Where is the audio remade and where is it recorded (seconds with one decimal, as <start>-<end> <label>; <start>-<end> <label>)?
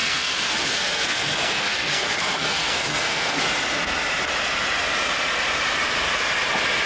0.0-3.4 remade; 3.4-6.9 recorded